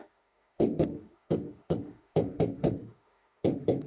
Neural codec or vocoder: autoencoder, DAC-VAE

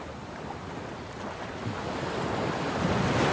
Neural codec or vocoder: none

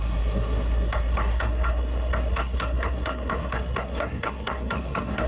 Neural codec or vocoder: codec, SNAC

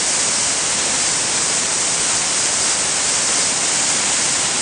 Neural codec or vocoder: none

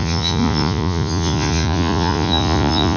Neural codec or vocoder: vocoder, Vocos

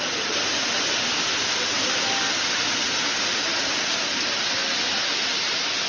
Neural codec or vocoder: none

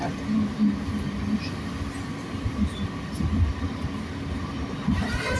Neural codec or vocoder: none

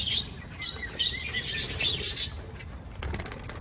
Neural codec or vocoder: none